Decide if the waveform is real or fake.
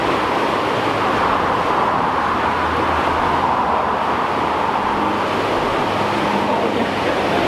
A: real